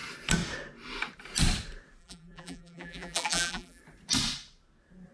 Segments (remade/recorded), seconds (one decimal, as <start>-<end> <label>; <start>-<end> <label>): 0.0-2.0 recorded; 2.0-3.8 remade; 3.8-5.1 recorded